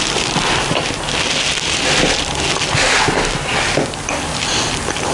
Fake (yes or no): no